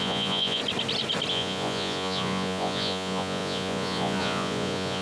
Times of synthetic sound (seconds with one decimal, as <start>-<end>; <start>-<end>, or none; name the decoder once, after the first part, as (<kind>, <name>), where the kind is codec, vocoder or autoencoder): 0.0-0.6 (vocoder, Vocos); 1.3-5.0